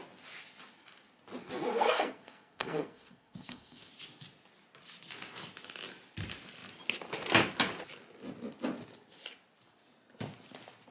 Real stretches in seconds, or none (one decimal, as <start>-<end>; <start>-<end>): 0.0-1.4; 3.9-10.9